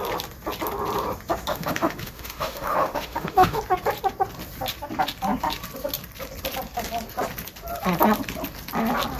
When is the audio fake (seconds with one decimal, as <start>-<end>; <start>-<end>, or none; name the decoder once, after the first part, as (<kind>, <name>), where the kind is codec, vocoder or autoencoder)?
1.5-3.6 (autoencoder, DAC-VAE)